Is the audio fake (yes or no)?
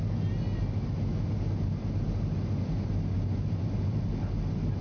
no